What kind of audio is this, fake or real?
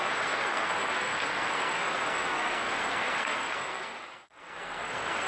fake